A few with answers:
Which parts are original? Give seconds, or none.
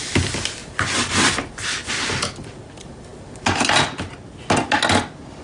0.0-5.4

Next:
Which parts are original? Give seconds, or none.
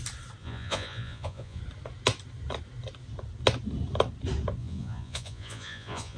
0.0-0.4; 1.6-4.6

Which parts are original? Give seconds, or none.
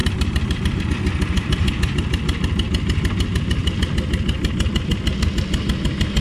0.8-6.2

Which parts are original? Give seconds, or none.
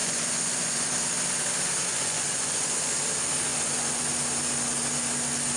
0.9-1.9; 2.9-3.5; 4.1-5.6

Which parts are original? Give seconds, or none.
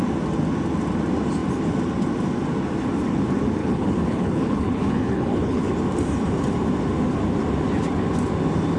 0.0-3.6; 5.7-8.8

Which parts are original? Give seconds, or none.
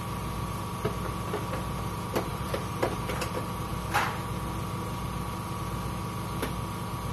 0.0-2.3; 3.3-7.1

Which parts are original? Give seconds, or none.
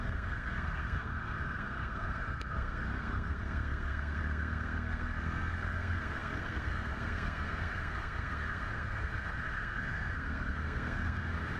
none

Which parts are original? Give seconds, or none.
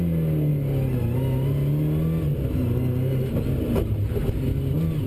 0.0-5.1